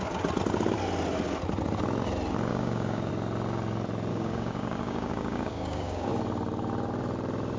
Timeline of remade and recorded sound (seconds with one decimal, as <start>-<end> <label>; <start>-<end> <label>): 0.0-2.5 recorded; 2.5-3.1 remade; 3.1-4.1 recorded; 4.1-6.1 remade; 6.1-7.6 recorded